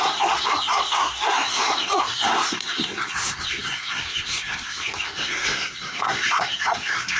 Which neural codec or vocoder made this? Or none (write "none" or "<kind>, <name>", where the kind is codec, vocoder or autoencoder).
codec, SNAC